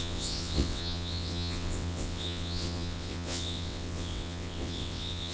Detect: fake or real fake